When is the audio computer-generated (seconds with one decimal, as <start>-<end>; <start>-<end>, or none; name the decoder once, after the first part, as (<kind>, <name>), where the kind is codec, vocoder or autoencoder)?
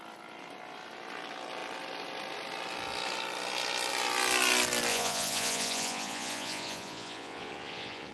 4.9-8.1 (vocoder, Vocos)